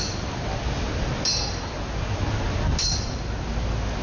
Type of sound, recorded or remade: recorded